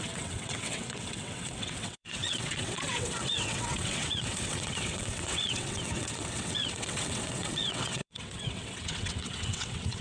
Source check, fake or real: fake